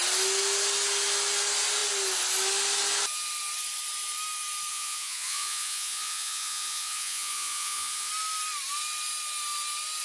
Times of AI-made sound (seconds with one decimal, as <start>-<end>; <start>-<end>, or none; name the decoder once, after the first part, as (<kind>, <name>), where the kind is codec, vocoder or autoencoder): 4.7-8.1 (vocoder, Vocos)